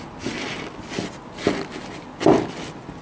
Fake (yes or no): no